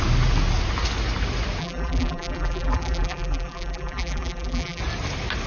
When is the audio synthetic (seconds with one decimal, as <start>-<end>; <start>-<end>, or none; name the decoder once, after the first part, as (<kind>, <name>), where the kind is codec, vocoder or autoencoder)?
1.6-4.8 (vocoder, BigVGAN v2)